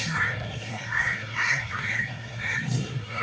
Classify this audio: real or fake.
fake